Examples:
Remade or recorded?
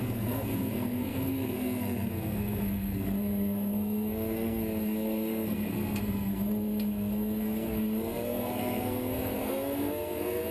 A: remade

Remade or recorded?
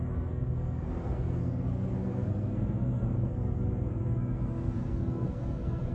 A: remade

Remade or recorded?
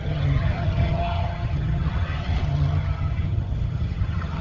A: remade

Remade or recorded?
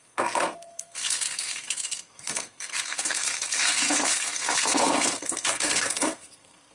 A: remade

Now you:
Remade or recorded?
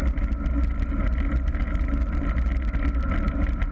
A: recorded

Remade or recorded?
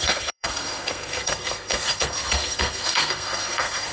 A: remade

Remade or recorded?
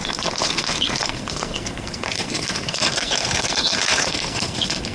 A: remade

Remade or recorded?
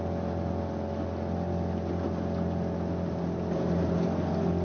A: recorded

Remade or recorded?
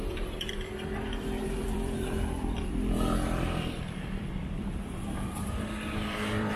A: remade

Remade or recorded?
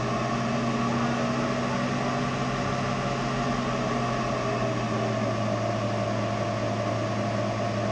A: recorded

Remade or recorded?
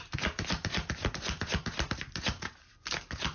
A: recorded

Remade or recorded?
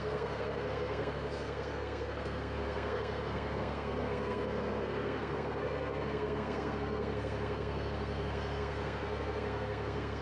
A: remade